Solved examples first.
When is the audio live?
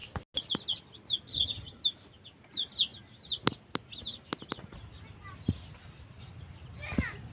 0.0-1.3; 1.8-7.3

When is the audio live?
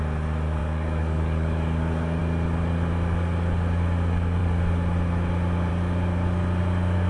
0.0-0.6; 2.2-7.1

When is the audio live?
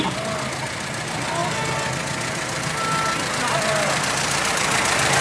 0.0-5.2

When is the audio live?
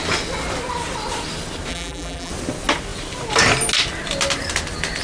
0.0-1.7; 2.3-5.0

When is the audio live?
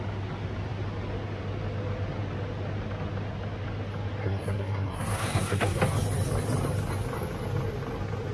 0.0-4.2; 5.8-8.3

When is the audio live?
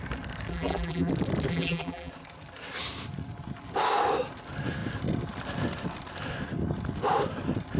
0.0-0.5; 1.1-1.5; 2.1-7.8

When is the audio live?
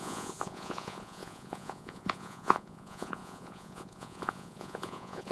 none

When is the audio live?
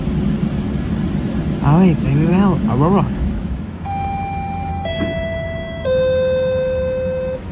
0.0-2.3; 3.9-4.7